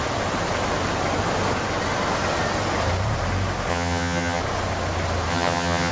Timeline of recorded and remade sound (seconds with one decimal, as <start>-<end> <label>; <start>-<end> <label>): 0.0-3.7 recorded; 3.7-4.4 remade; 4.4-5.3 recorded; 5.3-5.9 remade